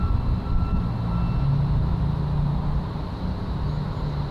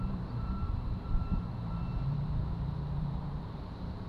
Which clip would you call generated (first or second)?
second